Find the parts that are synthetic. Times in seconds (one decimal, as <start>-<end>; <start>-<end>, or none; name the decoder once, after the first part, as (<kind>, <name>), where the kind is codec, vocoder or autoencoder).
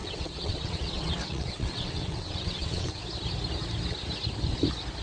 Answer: 0.0-3.0 (vocoder, WaveNeXt)